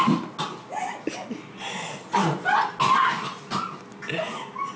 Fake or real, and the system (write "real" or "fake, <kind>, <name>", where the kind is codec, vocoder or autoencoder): real